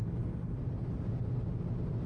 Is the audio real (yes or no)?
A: yes